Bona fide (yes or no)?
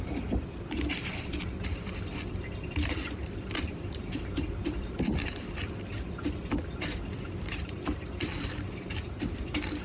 no